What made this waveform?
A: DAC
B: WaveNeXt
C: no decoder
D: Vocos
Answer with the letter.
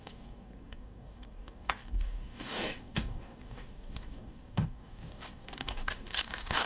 A